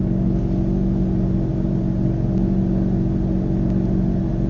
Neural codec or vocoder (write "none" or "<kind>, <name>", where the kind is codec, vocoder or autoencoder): none